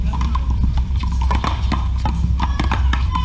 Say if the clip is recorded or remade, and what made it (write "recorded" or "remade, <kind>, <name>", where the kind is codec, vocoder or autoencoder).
recorded